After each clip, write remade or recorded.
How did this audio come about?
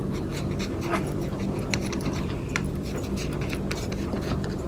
recorded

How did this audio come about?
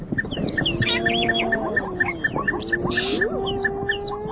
recorded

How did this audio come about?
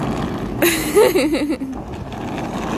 recorded